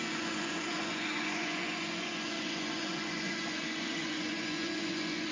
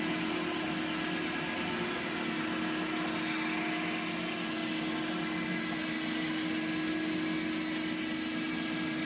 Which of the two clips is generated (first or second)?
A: first